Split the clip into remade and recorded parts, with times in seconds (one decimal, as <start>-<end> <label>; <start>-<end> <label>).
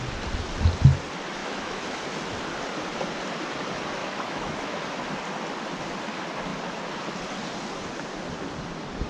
0.0-1.4 recorded; 1.4-2.0 remade; 2.0-4.0 recorded; 4.0-4.8 remade; 4.8-9.1 recorded